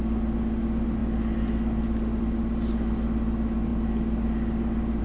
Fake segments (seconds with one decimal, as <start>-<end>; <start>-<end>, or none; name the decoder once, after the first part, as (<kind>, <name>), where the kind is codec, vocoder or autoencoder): none